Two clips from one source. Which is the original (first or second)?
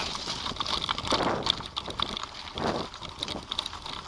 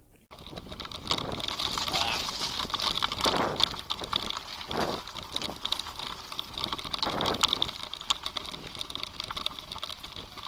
second